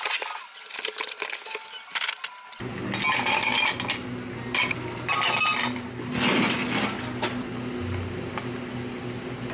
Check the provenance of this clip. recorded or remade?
recorded